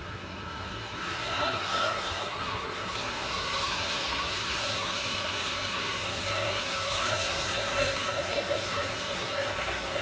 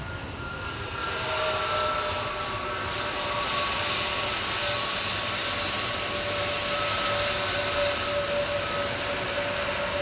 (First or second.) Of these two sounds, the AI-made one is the first